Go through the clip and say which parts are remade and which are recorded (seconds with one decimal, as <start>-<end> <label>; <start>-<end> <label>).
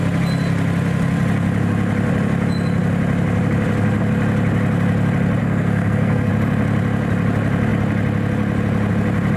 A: 0.0-5.4 recorded; 5.4-6.3 remade; 6.3-9.4 recorded